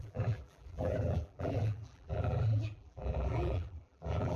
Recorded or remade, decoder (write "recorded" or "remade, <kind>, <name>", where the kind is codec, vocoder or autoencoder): remade, vocoder, BigVGAN v2